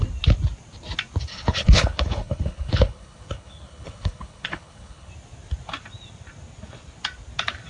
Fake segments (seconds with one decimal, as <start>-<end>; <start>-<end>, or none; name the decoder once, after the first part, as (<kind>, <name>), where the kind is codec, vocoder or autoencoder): 1.3-5.1 (codec, HILCodec)